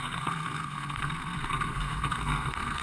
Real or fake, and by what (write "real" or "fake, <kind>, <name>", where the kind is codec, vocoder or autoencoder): fake, codec, SNAC